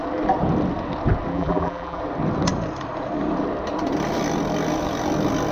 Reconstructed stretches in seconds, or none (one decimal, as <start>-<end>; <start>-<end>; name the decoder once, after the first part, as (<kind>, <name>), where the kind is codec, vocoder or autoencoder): 1.3-2.0 (vocoder, BigVGAN v2)